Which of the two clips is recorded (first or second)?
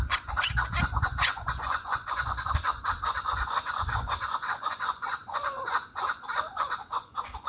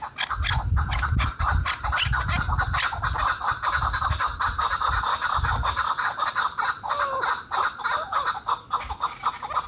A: second